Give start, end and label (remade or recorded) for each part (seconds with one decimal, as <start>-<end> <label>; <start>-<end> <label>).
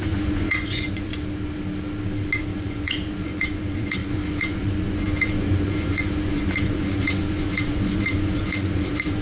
0.0-1.1 remade; 1.1-2.4 recorded; 2.4-9.2 remade